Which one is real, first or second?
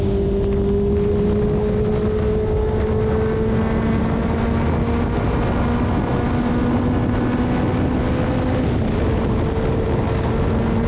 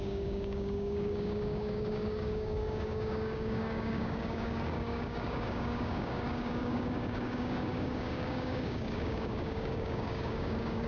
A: first